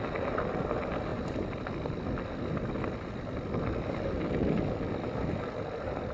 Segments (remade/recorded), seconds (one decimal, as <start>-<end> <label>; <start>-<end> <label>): 0.0-6.1 recorded